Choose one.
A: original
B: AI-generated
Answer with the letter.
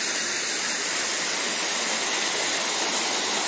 A